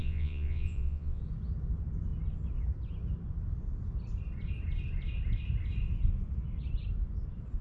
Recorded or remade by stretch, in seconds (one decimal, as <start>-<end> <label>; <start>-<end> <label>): 0.0-1.2 remade; 1.2-7.6 recorded